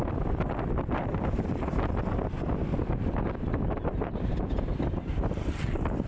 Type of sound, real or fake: fake